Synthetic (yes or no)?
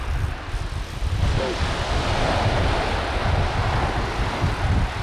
no